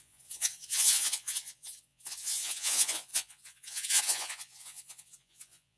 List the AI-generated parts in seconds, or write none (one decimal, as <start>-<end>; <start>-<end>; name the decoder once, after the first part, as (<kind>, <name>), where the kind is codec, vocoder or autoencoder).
0.0-5.8 (vocoder, Vocos)